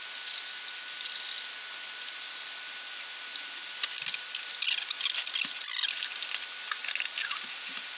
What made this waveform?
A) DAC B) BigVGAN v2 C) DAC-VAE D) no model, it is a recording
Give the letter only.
D